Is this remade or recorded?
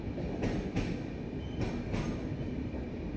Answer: recorded